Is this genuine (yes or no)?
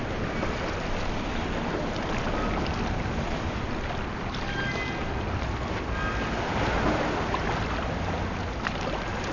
yes